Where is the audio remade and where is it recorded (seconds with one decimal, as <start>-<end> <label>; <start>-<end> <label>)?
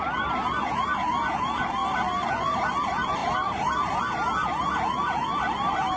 0.0-3.2 recorded; 3.2-4.0 remade; 4.0-6.0 recorded